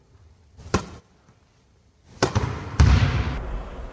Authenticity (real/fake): real